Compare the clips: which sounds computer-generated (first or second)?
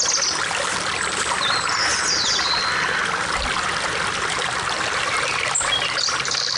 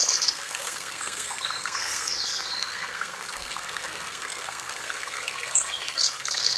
second